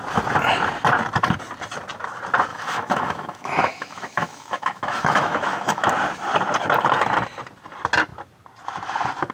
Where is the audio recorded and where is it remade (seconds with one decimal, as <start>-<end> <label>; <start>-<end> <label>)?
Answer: 0.0-2.5 recorded; 2.5-5.9 remade; 5.9-9.3 recorded